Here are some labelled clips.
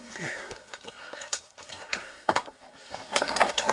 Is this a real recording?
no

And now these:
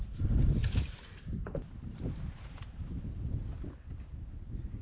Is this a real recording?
yes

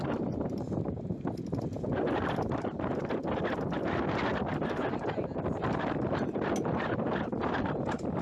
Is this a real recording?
yes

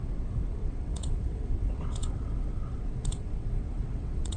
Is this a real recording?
no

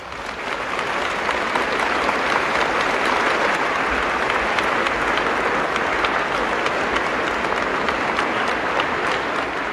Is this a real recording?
yes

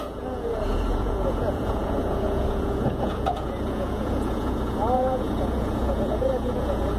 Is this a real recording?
no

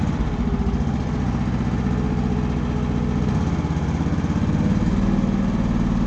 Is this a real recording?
yes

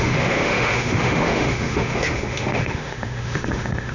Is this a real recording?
no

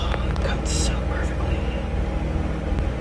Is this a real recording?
yes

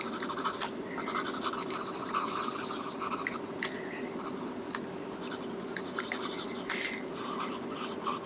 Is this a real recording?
yes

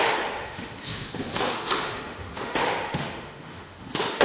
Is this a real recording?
no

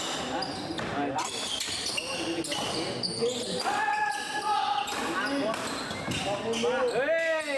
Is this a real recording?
yes